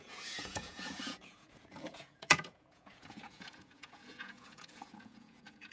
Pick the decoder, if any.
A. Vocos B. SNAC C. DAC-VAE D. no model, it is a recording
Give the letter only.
A